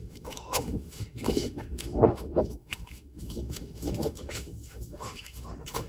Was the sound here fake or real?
fake